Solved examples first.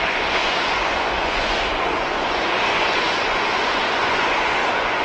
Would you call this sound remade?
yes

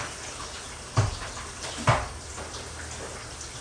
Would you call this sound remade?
no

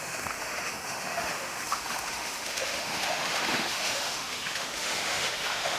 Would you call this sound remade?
yes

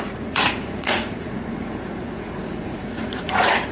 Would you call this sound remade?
yes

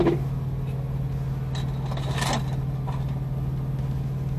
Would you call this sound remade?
no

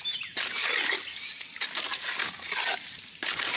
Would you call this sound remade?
no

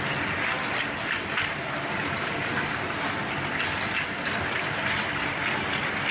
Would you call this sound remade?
no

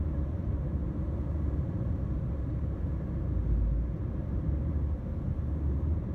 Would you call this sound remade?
yes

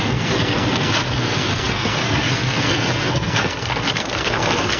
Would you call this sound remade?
yes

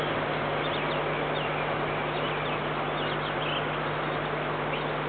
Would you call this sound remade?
no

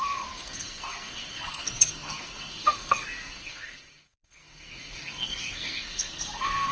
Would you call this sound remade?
yes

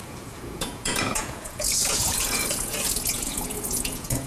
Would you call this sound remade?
yes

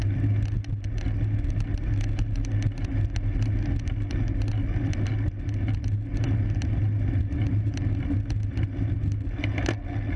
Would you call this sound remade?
no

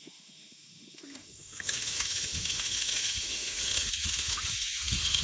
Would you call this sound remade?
yes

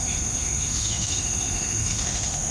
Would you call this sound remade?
yes